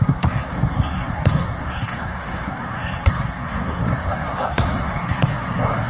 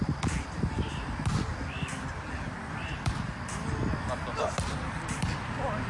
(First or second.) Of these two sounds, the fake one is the first